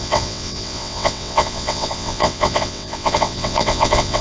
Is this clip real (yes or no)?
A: no